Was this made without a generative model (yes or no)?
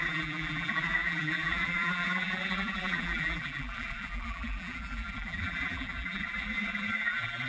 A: no